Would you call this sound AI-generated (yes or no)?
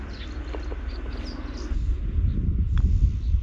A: no